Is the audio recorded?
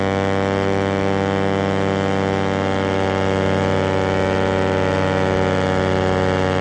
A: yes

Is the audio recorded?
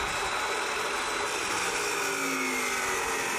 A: yes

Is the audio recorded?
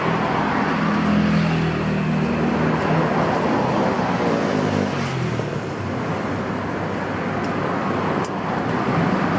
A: yes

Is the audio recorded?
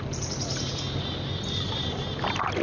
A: yes